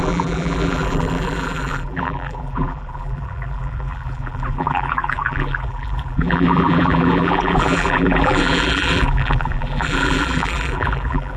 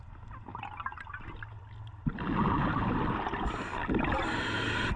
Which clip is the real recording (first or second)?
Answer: second